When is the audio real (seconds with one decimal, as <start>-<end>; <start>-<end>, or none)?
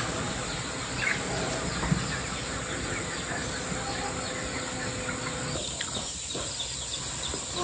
0.0-7.6